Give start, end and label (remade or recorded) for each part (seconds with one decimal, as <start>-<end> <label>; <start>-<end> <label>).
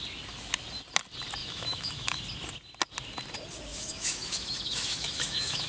0.0-1.4 recorded; 1.4-2.2 remade; 2.2-3.7 recorded; 3.7-5.7 remade